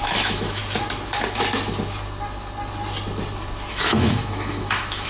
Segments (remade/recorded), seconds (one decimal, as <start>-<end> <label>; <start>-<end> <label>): 0.0-0.6 remade; 0.6-3.7 recorded; 3.7-5.1 remade